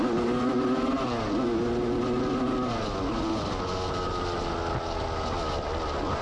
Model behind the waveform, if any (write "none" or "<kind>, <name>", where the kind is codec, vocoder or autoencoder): none